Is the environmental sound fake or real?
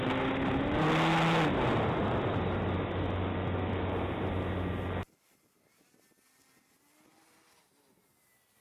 real